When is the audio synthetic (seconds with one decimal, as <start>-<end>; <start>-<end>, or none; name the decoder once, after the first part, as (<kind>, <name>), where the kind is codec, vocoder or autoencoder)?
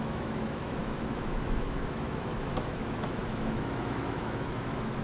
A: 0.0-5.0 (autoencoder, DAC-VAE)